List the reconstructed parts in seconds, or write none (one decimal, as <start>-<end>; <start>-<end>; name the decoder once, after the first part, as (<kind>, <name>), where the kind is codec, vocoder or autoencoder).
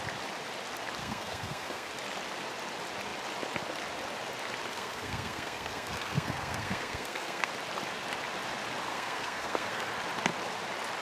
1.0-1.9 (codec, SNAC); 4.7-7.5; 8.9-9.9